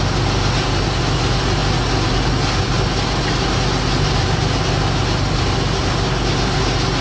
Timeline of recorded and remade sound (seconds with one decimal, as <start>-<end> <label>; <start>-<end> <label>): 0.0-7.0 recorded